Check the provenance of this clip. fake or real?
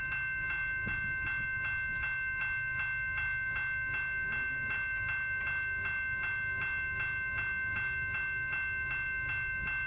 real